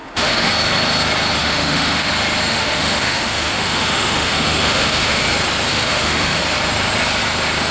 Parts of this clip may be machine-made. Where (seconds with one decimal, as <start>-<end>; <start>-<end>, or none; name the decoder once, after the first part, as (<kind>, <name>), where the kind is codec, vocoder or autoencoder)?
0.0-0.5 (autoencoder, DAC-VAE); 1.4-2.1; 2.5-5.2; 5.7-6.4